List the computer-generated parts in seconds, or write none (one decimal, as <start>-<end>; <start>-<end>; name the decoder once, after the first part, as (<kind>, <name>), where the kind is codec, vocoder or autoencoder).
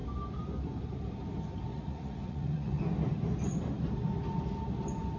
1.7-2.8 (vocoder, Vocos)